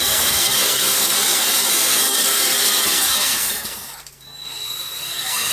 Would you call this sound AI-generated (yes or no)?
yes